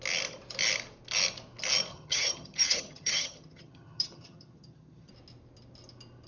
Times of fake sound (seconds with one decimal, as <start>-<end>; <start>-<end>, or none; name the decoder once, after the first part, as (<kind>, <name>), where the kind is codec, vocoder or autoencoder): 1.9-5.1 (vocoder, HiFi-GAN)